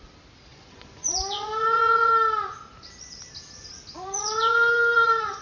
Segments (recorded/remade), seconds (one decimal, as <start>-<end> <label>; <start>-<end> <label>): 0.0-0.5 recorded; 0.5-2.1 remade; 2.1-3.9 recorded; 3.9-5.4 remade